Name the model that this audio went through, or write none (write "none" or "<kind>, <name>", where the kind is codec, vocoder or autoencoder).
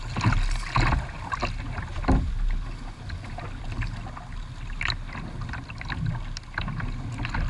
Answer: none